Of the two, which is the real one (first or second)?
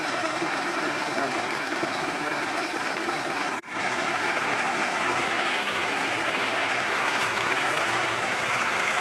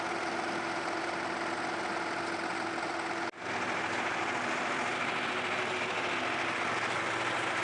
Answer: second